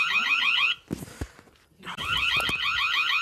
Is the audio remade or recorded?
remade